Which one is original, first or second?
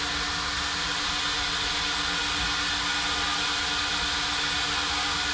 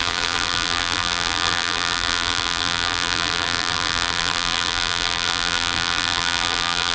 first